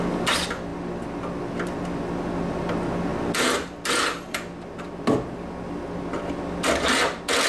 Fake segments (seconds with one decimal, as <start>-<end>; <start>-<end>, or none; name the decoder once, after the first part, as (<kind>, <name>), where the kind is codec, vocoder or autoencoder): none